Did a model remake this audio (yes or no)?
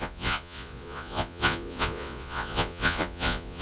yes